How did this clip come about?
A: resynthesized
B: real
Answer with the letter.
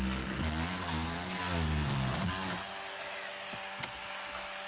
B